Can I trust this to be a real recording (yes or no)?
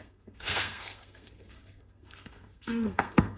no